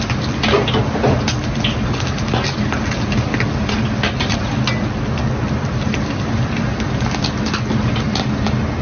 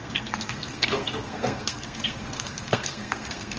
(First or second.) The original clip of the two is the first